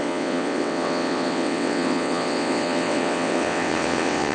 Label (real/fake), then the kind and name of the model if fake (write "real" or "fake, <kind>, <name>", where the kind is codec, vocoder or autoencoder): fake, vocoder, WaveNeXt